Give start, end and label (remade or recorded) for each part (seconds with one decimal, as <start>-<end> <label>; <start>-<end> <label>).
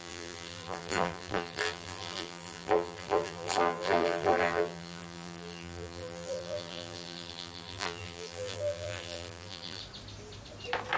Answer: 0.0-9.8 remade; 9.8-11.0 recorded